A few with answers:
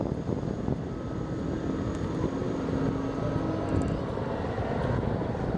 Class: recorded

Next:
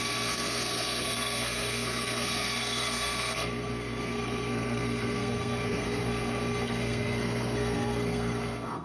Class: remade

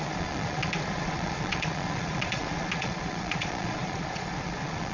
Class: remade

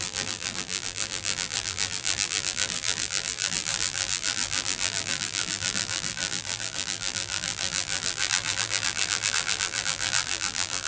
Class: remade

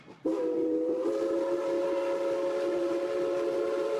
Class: recorded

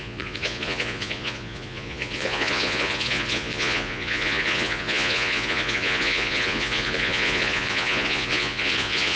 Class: remade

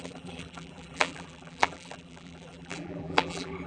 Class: remade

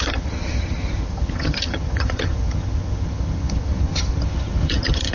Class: remade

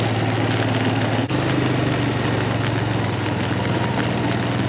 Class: recorded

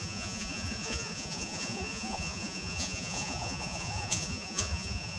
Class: remade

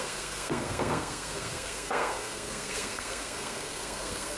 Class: remade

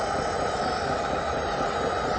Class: recorded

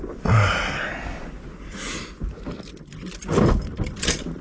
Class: recorded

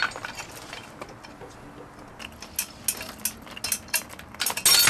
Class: recorded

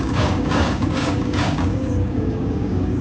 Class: remade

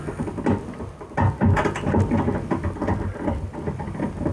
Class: recorded